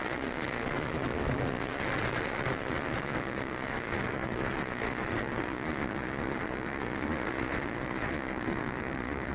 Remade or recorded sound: remade